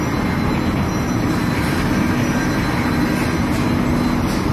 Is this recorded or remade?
recorded